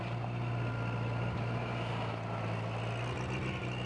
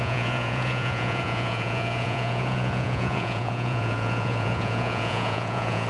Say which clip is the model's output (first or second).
second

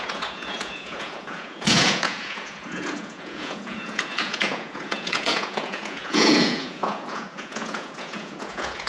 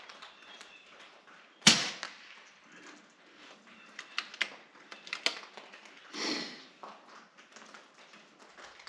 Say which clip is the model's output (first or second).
first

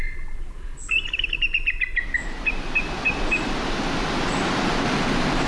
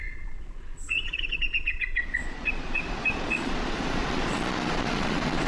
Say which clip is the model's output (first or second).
second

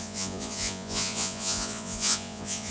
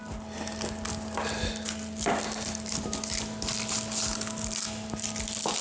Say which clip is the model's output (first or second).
first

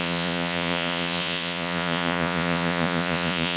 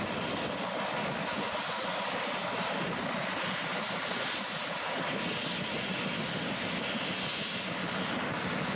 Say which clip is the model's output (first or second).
first